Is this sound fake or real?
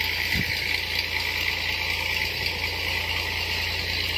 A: real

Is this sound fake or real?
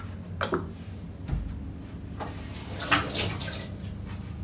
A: real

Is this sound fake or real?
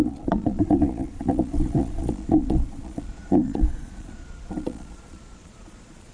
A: fake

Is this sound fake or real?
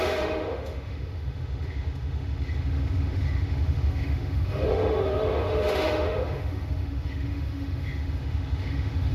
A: fake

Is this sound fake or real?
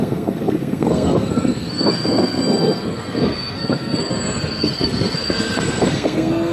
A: fake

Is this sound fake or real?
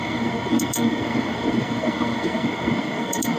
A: fake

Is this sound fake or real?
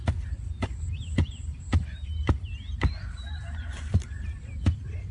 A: fake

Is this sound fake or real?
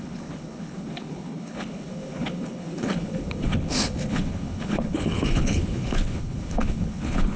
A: fake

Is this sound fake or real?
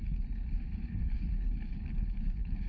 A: fake